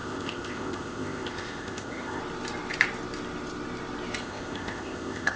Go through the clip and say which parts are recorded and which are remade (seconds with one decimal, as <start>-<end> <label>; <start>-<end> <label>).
0.0-2.2 remade; 2.2-4.2 recorded; 4.2-5.4 remade